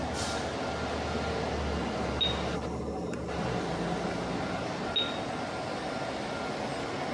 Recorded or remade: recorded